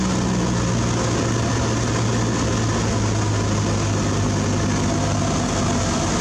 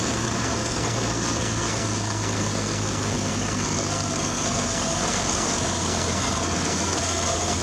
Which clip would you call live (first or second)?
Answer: first